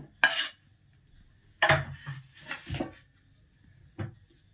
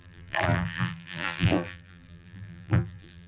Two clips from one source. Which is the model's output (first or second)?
second